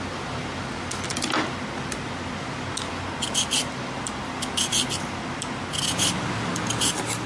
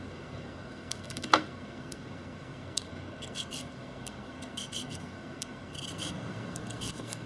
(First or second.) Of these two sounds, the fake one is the second